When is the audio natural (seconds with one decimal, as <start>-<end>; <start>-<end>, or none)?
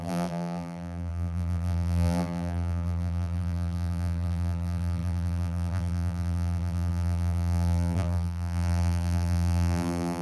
none